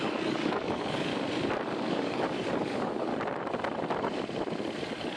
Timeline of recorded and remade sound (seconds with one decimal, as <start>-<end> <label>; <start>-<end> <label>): 0.0-1.1 remade; 1.1-1.9 recorded; 1.9-3.1 remade; 3.1-4.8 recorded; 4.8-5.2 remade